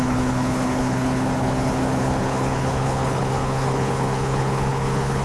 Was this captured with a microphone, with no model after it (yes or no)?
no